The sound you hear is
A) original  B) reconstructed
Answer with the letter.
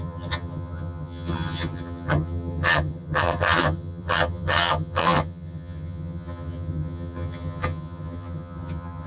B